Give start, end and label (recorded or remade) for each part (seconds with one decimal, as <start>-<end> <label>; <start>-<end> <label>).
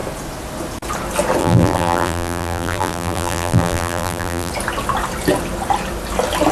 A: 0.0-1.4 recorded; 1.4-4.5 remade; 4.5-6.5 recorded